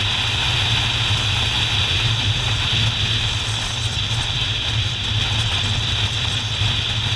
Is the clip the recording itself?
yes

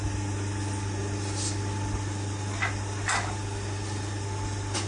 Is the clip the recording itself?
yes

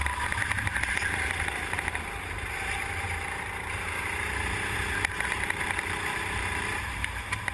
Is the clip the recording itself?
no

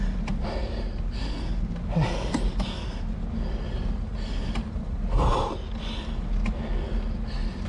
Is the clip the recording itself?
yes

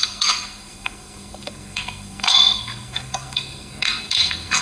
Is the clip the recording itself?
no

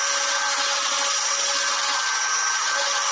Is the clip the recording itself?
yes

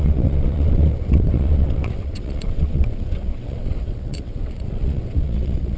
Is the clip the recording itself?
no